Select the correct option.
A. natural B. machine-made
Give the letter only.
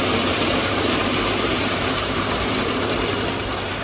B